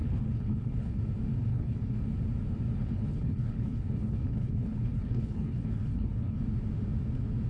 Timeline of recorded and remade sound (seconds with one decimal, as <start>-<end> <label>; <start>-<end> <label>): 0.0-1.0 remade; 1.0-1.5 recorded; 1.5-2.0 remade; 2.0-2.8 recorded; 2.8-6.4 remade; 6.4-7.5 recorded